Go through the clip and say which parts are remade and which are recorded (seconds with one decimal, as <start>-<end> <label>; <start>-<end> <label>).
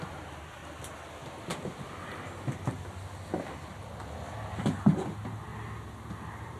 0.0-0.6 remade; 0.6-4.6 recorded; 4.6-5.5 remade; 5.5-6.1 recorded; 6.1-6.6 remade